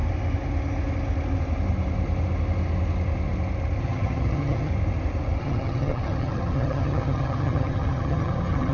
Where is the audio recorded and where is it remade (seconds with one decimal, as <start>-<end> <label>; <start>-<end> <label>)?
0.0-3.8 recorded; 3.8-4.7 remade; 4.7-5.4 recorded; 5.4-8.7 remade